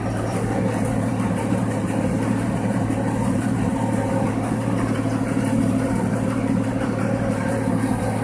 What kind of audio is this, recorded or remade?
remade